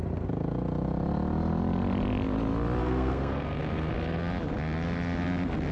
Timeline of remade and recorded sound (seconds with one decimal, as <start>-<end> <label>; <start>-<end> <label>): 0.0-2.8 recorded; 2.8-3.9 remade; 3.9-5.7 recorded